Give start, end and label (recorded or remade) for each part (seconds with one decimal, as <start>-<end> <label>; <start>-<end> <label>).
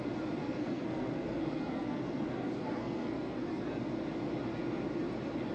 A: 0.0-0.4 recorded; 0.4-3.7 remade; 3.7-5.5 recorded